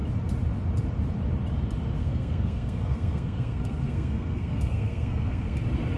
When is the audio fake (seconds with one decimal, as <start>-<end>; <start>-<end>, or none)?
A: 2.0-5.6